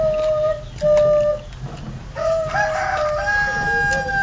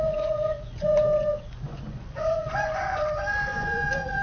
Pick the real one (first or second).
first